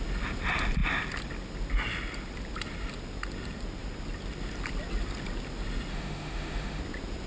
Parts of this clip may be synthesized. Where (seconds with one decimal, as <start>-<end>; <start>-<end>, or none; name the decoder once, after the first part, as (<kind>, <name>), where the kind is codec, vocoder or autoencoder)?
5.9-6.8 (autoencoder, DAC-VAE)